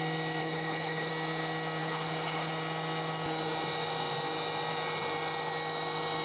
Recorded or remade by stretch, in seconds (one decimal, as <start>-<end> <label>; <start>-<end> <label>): 0.0-0.4 recorded; 0.4-1.1 remade; 1.1-1.8 recorded; 1.8-2.5 remade; 2.5-6.2 recorded